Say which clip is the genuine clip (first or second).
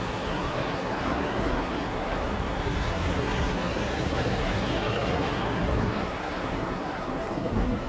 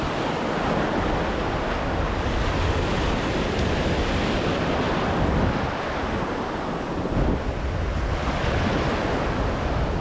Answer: second